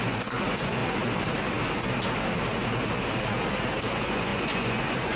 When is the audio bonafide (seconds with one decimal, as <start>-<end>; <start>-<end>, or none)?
0.8-3.9